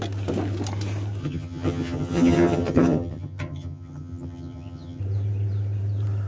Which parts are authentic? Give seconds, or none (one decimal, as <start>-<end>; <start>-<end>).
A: 0.0-1.2; 5.0-6.3